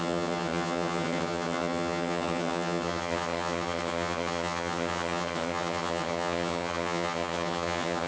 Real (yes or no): no